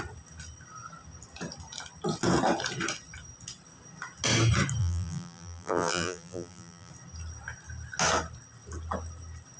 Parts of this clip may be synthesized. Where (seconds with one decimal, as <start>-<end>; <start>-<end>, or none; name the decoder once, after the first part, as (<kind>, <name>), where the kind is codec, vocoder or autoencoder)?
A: 4.8-6.9 (vocoder, BigVGAN v2)